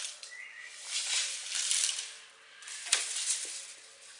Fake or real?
real